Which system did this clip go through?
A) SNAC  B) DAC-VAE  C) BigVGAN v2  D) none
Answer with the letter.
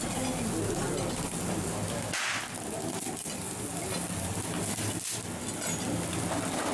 D